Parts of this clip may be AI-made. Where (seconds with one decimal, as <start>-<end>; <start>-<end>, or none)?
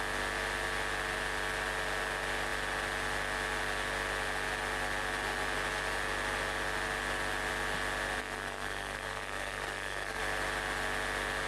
8.2-10.2